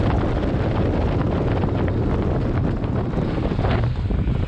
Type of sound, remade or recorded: recorded